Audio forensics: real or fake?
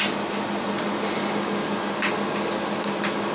real